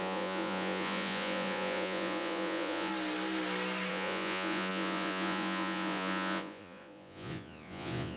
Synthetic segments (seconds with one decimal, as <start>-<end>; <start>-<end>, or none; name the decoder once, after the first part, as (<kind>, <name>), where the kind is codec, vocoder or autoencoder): 0.0-2.9 (vocoder, Vocos); 3.9-8.2